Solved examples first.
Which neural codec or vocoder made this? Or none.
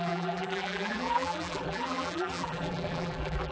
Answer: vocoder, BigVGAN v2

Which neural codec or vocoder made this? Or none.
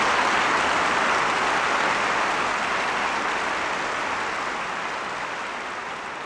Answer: none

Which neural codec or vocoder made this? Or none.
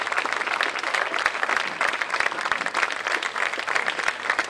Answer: none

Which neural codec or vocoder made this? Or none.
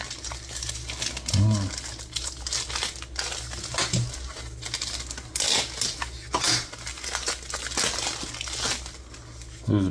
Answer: none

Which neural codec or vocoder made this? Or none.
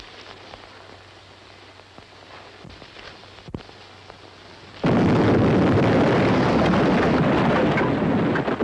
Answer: none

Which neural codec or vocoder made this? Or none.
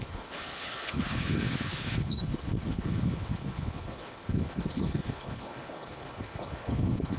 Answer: codec, HILCodec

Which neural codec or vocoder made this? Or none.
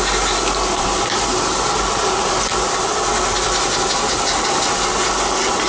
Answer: none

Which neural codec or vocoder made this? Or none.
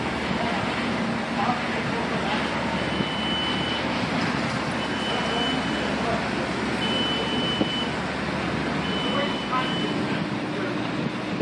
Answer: none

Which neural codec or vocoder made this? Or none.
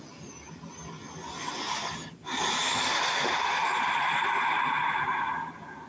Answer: none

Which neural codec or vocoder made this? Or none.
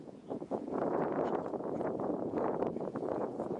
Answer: vocoder, Vocos